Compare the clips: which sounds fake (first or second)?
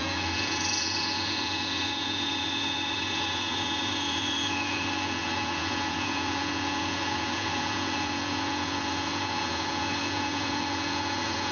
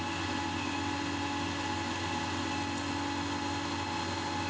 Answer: first